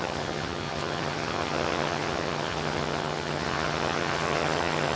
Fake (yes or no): yes